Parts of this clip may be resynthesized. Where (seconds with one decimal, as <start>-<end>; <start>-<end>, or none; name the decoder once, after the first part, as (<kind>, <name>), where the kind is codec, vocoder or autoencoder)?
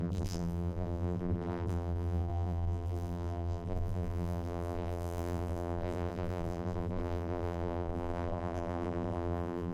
0.0-9.7 (vocoder, BigVGAN v2)